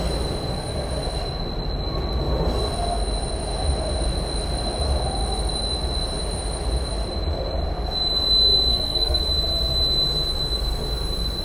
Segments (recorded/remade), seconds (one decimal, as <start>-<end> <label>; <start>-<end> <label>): 0.0-8.7 recorded; 8.7-9.2 remade; 9.2-11.4 recorded